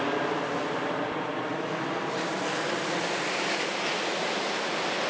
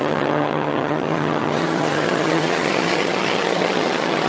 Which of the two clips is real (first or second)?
first